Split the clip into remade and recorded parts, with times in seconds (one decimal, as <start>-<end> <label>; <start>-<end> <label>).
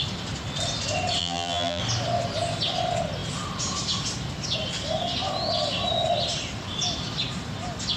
0.0-1.2 recorded; 1.2-1.8 remade; 1.8-8.0 recorded